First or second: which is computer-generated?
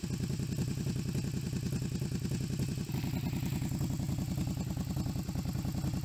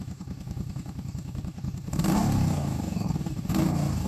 second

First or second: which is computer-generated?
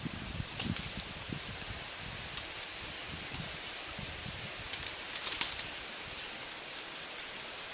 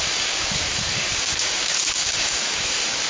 second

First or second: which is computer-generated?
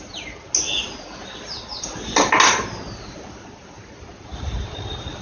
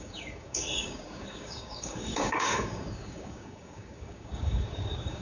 second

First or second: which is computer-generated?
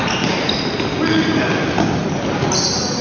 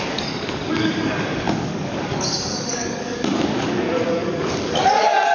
second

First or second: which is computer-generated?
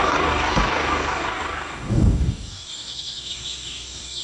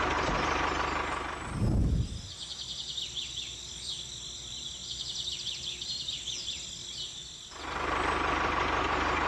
first